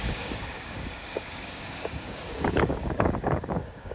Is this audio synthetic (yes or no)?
yes